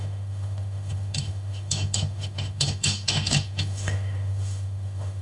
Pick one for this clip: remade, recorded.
remade